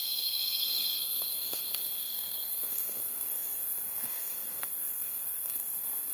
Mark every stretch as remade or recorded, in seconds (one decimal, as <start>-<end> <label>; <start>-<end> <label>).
0.0-6.1 remade